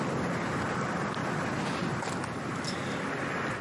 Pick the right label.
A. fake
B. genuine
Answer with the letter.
B